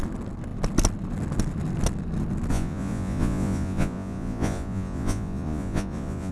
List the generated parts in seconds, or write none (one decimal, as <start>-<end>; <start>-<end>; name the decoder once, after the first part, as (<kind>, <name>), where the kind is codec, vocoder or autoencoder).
2.5-6.3 (vocoder, Vocos)